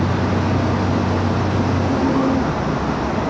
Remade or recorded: recorded